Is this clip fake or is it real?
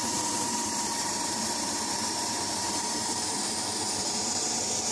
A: fake